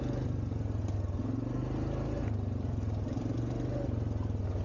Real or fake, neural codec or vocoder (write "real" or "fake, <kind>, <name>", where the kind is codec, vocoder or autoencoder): real